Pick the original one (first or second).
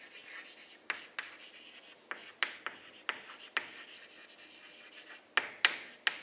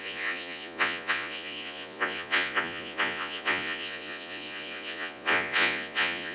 first